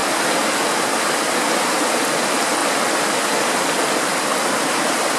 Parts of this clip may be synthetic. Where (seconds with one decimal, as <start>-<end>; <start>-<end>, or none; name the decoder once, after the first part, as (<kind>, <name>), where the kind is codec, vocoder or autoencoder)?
none

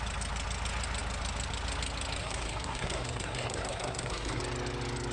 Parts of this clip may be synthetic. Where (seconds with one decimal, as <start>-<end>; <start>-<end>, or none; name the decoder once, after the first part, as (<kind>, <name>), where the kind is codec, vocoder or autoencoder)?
2.2-4.4 (codec, SNAC)

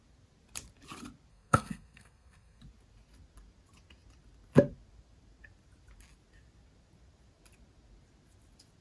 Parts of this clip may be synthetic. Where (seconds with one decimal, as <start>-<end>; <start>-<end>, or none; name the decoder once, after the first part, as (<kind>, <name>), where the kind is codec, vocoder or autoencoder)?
1.3-2.6 (codec, SNAC)

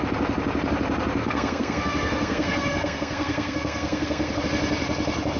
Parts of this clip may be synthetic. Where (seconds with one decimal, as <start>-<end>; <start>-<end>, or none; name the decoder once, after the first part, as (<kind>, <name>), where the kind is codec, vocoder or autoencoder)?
1.2-4.4 (codec, SNAC)

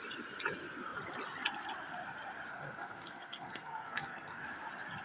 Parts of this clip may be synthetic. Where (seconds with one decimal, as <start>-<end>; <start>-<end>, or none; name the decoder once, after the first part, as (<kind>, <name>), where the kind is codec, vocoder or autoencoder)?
2.5-4.4 (codec, SNAC)

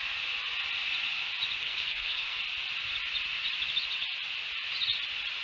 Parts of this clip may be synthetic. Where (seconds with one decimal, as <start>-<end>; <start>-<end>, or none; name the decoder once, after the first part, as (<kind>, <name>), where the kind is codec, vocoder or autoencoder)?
1.6-2.4 (codec, SNAC)